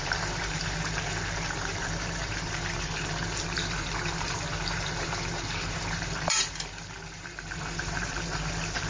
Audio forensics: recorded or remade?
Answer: remade